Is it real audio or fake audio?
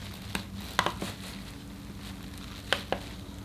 real